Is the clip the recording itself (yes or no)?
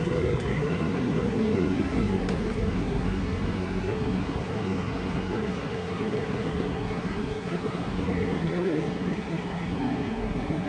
no